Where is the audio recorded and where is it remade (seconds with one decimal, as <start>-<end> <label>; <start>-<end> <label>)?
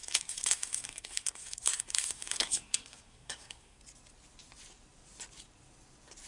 0.0-3.8 remade; 3.8-6.3 recorded